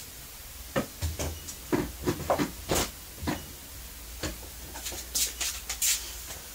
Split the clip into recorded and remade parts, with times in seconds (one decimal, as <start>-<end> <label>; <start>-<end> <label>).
0.0-6.5 recorded